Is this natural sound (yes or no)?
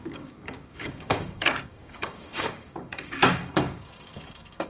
no